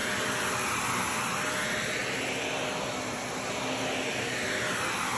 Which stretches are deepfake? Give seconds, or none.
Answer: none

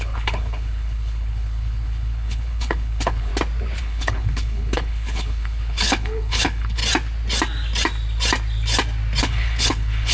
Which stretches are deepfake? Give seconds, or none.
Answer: 0.0-3.3 (codec, HILCodec); 3.8-6.8; 9.2-10.1

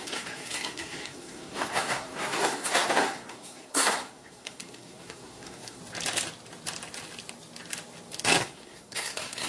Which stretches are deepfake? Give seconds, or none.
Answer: 0.0-5.8 (codec, SNAC); 8.4-9.5

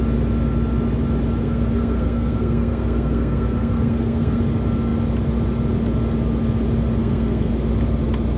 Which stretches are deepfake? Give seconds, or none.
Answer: 1.4-4.4 (codec, SNAC); 7.0-7.5

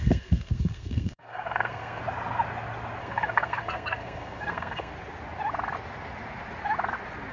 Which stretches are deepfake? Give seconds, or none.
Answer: 0.0-2.0 (codec, SNAC); 3.0-4.9